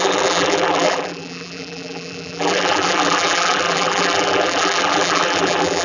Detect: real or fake fake